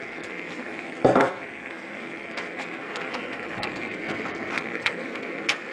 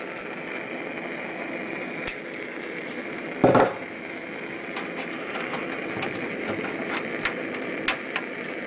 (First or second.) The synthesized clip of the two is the first